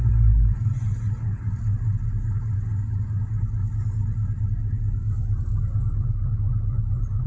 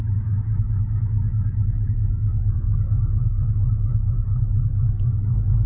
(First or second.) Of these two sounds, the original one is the first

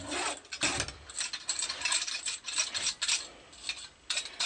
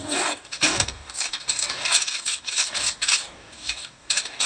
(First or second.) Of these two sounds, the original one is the first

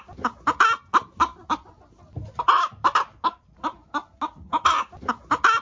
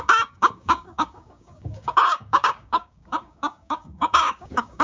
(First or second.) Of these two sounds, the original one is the first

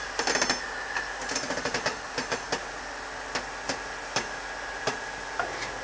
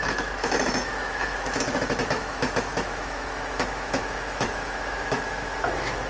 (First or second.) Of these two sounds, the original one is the first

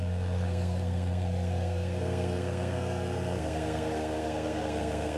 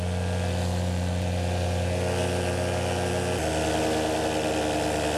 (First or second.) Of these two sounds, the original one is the second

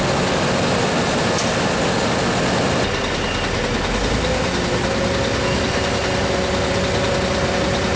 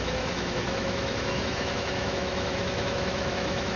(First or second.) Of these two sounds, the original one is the first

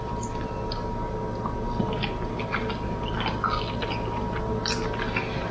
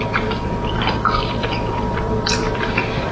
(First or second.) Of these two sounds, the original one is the first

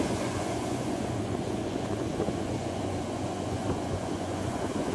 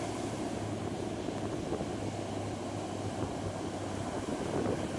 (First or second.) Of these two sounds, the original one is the second